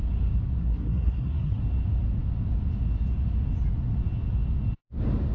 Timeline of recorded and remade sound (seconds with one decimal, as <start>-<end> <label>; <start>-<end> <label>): 0.0-0.6 recorded; 0.6-1.6 remade; 1.6-5.3 recorded